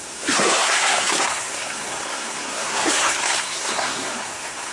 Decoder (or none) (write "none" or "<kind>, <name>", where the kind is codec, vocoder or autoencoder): codec, SNAC